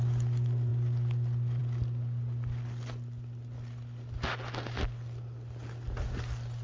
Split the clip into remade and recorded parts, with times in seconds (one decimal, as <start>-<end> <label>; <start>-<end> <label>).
0.0-6.6 recorded